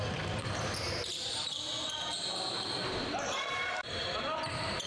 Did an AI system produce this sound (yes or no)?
yes